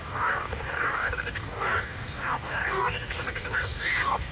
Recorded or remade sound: remade